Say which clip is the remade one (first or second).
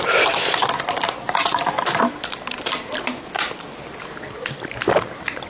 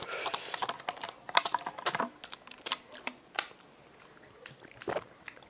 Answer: first